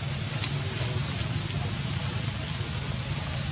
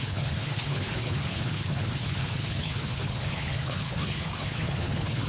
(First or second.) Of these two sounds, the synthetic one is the second